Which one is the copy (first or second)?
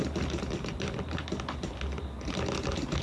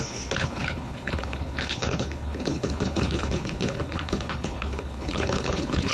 second